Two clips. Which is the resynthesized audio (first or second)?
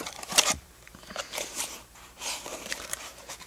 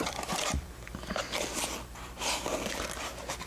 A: first